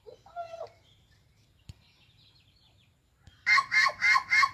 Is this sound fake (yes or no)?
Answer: yes